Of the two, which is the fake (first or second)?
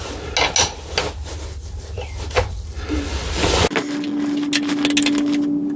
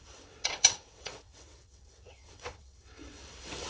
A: second